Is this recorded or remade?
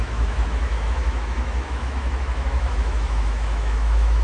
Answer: remade